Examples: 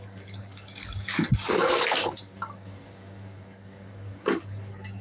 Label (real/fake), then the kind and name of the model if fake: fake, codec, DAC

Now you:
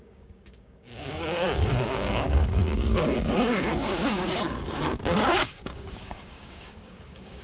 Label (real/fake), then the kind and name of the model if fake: fake, codec, DAC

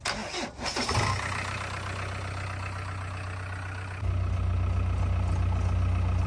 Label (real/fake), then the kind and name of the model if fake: real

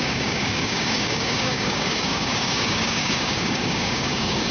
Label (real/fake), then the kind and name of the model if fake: fake, codec, DAC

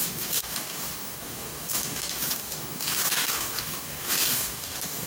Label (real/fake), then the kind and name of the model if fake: fake, codec, DAC